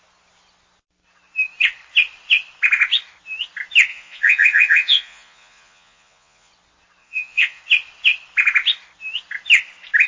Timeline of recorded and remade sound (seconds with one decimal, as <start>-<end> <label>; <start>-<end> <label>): 0.0-3.9 recorded; 3.9-6.5 remade; 6.5-7.0 recorded; 7.0-7.6 remade; 7.6-10.1 recorded